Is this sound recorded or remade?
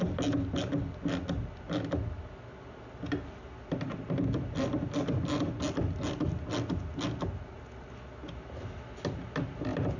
recorded